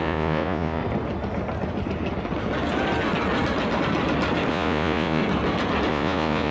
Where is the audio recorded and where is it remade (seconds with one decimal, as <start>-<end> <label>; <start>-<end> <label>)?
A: 0.0-0.8 remade; 0.8-4.5 recorded; 4.5-5.2 remade; 5.2-5.9 recorded; 5.9-6.5 remade